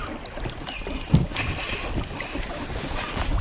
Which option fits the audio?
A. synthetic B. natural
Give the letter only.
B